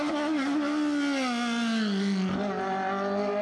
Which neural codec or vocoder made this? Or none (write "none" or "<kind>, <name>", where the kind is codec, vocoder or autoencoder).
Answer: none